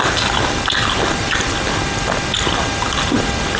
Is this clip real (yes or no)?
yes